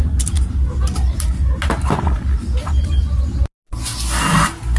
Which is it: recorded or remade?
recorded